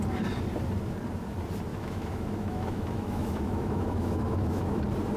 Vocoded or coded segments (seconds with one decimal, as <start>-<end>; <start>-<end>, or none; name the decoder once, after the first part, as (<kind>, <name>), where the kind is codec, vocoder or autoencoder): 1.7-4.8 (autoencoder, DAC-VAE)